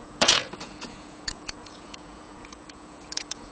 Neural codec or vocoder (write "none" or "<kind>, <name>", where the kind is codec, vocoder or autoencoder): vocoder, Vocos